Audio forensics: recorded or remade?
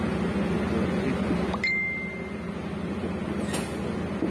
recorded